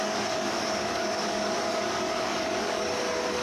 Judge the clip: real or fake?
fake